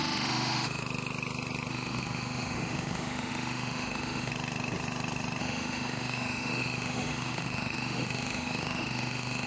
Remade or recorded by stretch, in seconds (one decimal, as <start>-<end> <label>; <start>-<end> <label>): 0.0-0.8 remade; 0.8-1.7 recorded; 1.7-4.3 remade; 4.3-5.4 recorded; 5.4-9.5 remade